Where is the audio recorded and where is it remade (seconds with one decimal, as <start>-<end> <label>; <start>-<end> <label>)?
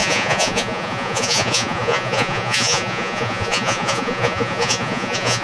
0.0-5.4 remade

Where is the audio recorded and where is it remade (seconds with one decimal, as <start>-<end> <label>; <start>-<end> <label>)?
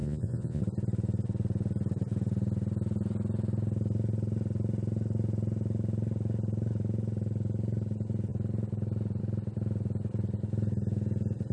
0.0-0.6 remade; 0.6-11.5 recorded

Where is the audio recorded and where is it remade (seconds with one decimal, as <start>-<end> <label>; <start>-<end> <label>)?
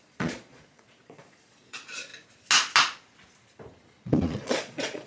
0.0-2.1 remade; 2.1-4.0 recorded; 4.0-5.1 remade